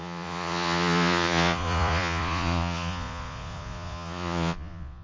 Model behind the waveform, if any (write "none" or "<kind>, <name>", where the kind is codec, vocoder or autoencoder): vocoder, Vocos